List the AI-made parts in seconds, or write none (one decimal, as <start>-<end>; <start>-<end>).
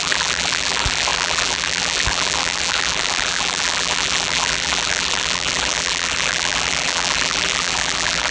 0.0-8.3